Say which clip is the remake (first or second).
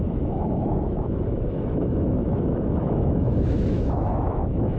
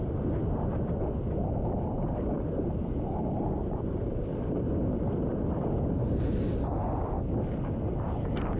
first